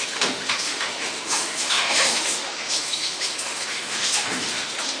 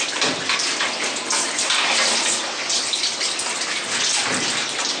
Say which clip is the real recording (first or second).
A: second